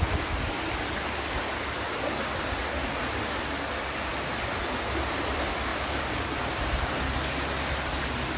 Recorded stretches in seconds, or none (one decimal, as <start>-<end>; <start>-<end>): 0.0-5.7; 7.0-8.4